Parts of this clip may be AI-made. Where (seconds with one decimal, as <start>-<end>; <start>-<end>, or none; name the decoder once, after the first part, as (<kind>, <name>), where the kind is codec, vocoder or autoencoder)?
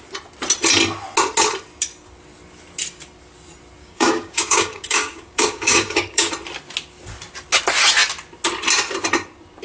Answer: 3.8-6.3 (codec, DAC)